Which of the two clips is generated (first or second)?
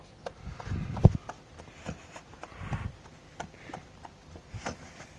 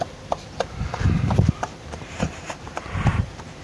second